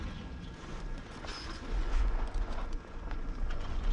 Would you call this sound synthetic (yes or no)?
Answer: yes